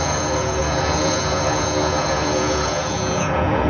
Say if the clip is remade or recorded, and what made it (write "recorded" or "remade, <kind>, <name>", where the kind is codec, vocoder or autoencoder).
remade, vocoder, Vocos